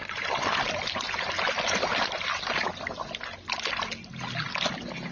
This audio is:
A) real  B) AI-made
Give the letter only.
A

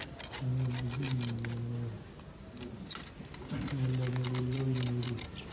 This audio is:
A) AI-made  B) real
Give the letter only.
B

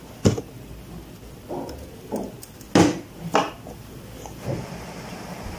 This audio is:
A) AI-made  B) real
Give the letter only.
B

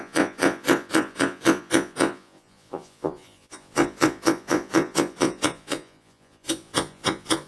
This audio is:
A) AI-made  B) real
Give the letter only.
A